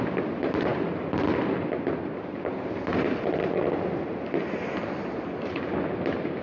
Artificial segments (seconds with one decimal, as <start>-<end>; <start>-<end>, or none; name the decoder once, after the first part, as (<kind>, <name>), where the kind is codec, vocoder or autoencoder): none